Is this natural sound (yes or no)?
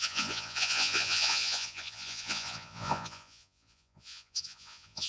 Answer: no